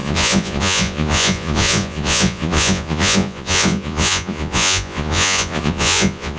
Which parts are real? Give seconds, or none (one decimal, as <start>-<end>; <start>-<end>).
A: none